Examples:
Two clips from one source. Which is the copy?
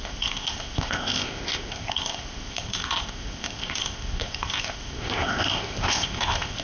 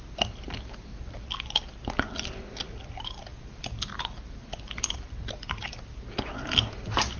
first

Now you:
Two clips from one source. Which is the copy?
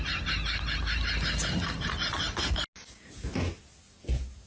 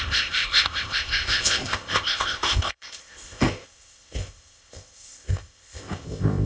second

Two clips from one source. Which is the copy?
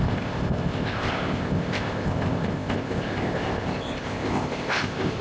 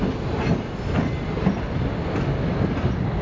first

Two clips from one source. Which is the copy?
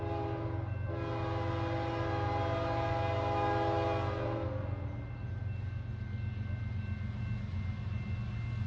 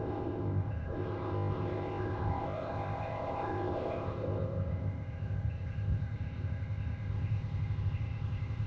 second